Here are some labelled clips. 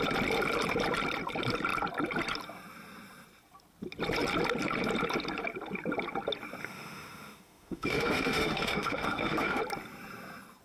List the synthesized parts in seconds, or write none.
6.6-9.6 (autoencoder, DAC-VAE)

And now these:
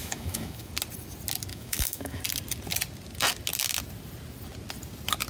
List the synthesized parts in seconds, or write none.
0.0-0.7 (autoencoder, DAC-VAE); 1.5-2.2

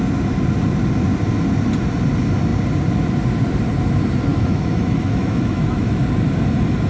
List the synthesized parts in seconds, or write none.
4.3-6.0 (autoencoder, DAC-VAE)

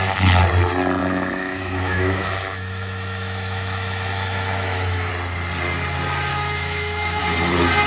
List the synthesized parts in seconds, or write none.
1.0-5.1 (autoencoder, DAC-VAE); 6.3-7.2

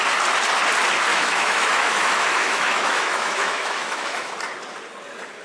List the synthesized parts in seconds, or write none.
1.1-4.3 (autoencoder, DAC-VAE)

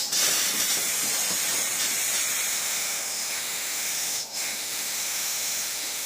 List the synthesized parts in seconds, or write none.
2.5-6.1 (autoencoder, DAC-VAE)

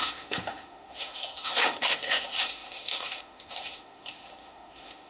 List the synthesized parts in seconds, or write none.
0.0-5.1 (autoencoder, DAC-VAE)

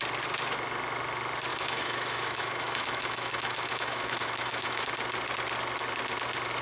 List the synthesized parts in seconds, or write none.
1.5-4.9 (autoencoder, DAC-VAE)